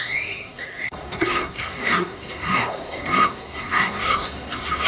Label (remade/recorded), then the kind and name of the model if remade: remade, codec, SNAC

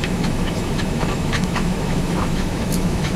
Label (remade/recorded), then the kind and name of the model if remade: remade, autoencoder, DAC-VAE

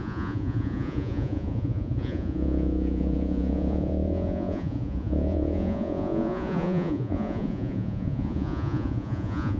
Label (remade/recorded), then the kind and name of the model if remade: remade, vocoder, Vocos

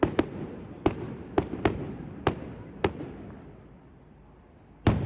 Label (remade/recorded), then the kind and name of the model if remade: recorded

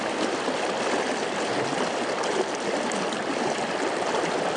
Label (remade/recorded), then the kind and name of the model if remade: recorded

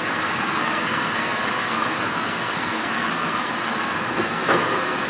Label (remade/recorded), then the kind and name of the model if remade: remade, codec, SNAC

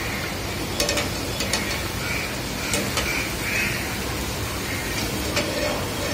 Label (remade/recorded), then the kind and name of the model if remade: recorded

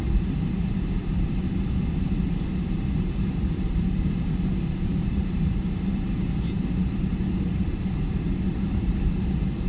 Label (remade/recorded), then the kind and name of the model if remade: remade, vocoder, BigVGAN v2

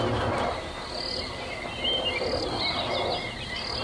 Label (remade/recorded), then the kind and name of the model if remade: recorded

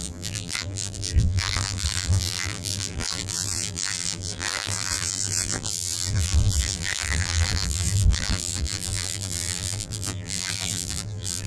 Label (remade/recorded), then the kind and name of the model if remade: remade, vocoder, BigVGAN v2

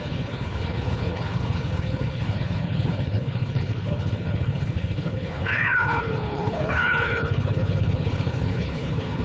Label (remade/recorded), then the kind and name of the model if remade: remade, codec, HILCodec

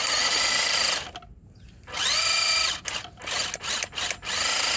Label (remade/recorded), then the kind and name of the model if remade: recorded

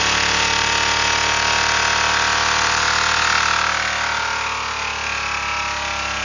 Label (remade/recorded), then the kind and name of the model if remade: recorded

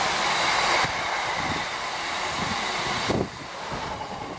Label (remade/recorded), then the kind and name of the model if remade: recorded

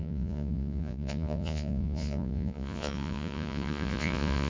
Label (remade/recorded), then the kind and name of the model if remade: remade, vocoder, Vocos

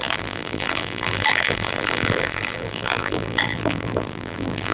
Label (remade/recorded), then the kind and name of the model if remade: remade, vocoder, BigVGAN v2